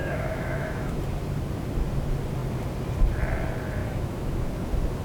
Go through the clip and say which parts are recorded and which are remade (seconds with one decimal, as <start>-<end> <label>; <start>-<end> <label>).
0.0-1.0 remade; 1.0-3.8 recorded; 3.8-4.4 remade; 4.4-5.0 recorded